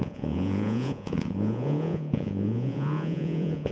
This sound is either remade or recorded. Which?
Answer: remade